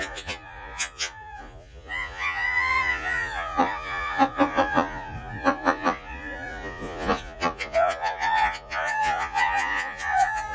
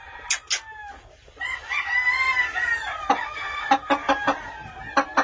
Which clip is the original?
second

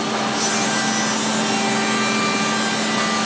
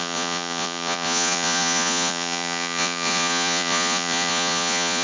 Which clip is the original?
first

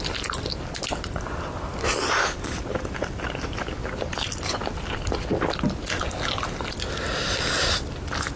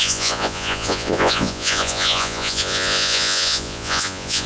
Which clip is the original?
first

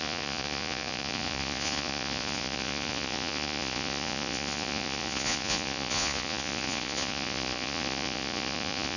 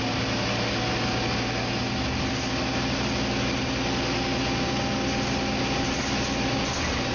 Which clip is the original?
second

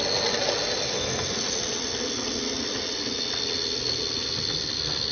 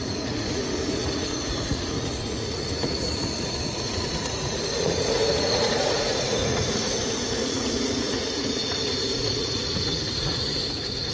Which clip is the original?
first